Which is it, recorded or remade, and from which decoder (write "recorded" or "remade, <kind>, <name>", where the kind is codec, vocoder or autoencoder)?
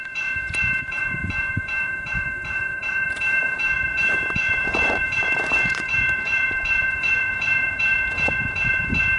remade, vocoder, Vocos